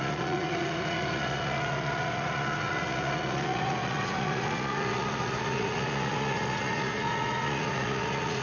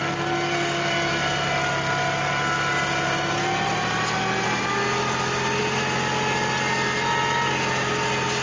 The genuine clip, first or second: second